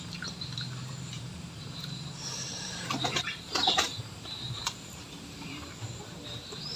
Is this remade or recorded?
remade